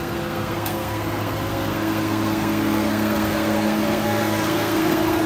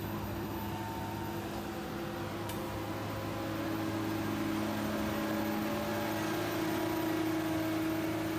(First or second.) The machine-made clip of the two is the first